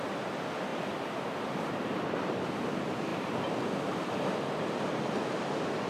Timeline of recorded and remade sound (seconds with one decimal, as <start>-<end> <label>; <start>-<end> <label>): 0.0-5.9 recorded